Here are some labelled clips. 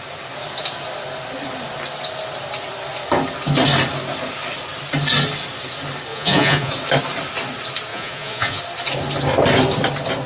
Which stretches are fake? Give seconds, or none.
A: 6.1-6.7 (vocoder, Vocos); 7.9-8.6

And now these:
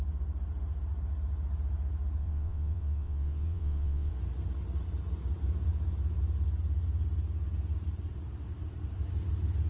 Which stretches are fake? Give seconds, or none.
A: 2.2-4.1 (vocoder, WaveNeXt)

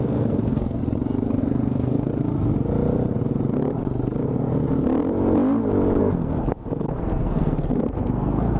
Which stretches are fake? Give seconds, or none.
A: 0.0-0.8 (codec, SNAC); 1.4-2.1; 6.0-8.6

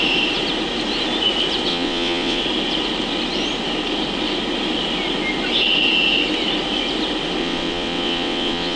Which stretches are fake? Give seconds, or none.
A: 1.7-2.4 (vocoder, WaveNeXt); 7.4-8.8

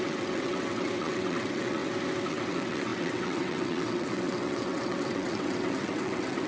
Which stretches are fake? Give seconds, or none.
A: 0.0-1.8 (vocoder, WaveNeXt); 2.3-6.5

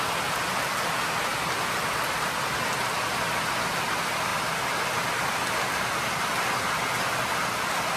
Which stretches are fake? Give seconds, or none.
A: none

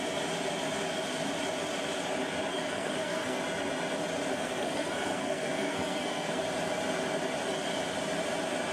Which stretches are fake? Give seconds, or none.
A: 2.5-3.4 (codec, SNAC); 4.3-6.4